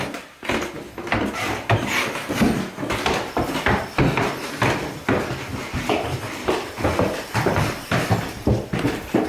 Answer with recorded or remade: recorded